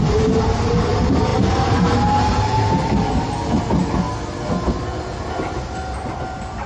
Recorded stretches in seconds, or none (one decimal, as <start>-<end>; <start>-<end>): 0.0-6.7